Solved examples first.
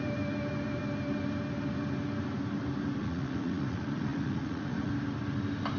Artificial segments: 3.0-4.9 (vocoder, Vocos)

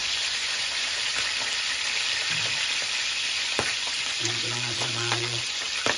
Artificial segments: 0.0-0.9 (vocoder, Vocos); 3.0-5.6

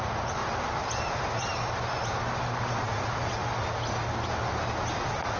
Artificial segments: 0.0-0.4 (vocoder, Vocos); 1.1-1.5; 2.7-3.4; 5.0-5.4